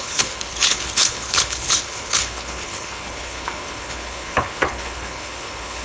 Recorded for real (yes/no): no